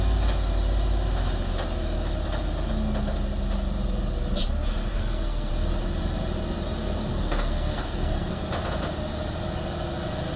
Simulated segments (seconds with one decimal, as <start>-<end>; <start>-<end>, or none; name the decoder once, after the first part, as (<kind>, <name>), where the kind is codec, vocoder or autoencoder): 4.9-5.5 (codec, SNAC); 7.1-8.5